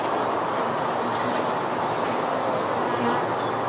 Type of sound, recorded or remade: recorded